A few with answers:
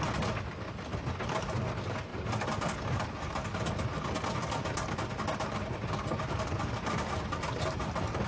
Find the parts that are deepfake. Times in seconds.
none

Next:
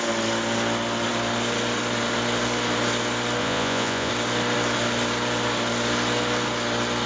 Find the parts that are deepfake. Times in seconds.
3.4-4.1 (vocoder, Vocos)

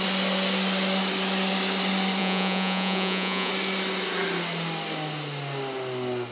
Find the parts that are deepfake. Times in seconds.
2.2-3.5 (vocoder, Vocos)

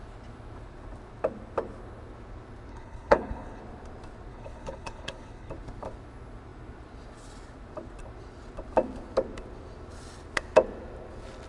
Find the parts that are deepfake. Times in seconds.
2.7-3.6 (codec, HILCodec); 4.3-5.5